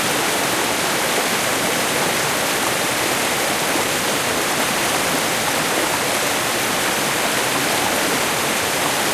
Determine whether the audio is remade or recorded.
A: remade